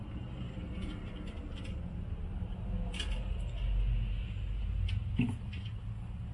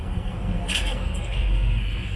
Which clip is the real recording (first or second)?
first